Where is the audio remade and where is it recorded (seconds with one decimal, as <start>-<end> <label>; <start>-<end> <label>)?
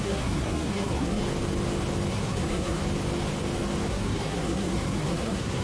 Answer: 0.0-1.2 remade; 1.2-2.1 recorded; 2.1-2.8 remade; 2.8-3.9 recorded; 3.9-5.6 remade